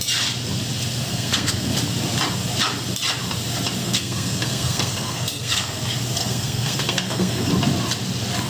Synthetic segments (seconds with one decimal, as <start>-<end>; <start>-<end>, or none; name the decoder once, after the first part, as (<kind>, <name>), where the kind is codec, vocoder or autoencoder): 1.1-1.7 (codec, SNAC); 3.8-5.8; 6.2-7.5